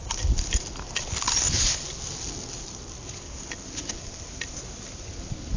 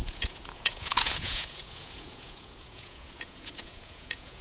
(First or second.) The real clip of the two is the first